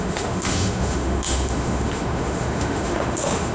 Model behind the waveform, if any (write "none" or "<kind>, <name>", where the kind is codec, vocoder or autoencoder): autoencoder, DAC-VAE